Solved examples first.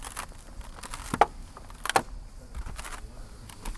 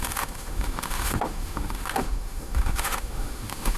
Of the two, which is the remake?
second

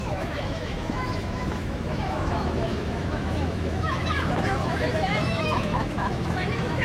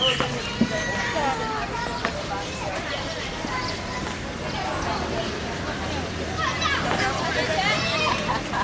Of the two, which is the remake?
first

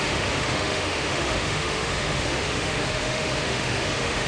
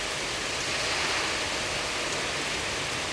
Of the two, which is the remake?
first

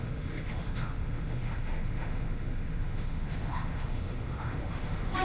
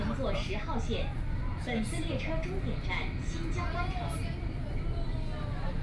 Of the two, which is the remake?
first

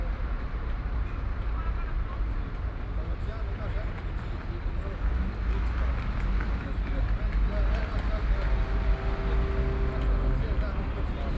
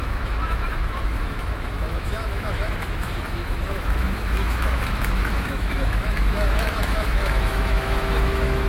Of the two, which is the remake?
second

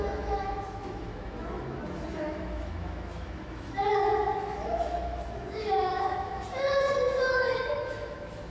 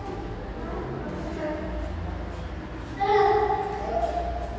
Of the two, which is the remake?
first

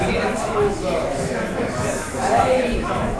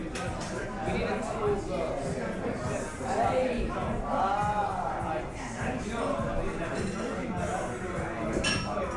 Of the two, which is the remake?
first